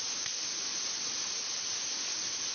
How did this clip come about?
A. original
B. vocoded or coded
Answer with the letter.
A